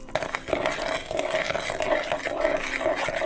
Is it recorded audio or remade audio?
recorded